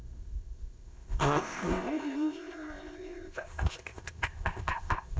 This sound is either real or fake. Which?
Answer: fake